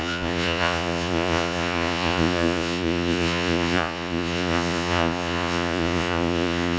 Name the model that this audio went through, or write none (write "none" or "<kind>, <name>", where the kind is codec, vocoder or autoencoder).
vocoder, Vocos